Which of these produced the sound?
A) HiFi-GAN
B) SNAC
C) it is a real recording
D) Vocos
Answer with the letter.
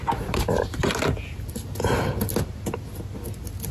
C